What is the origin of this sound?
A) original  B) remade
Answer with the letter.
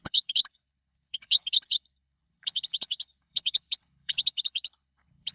B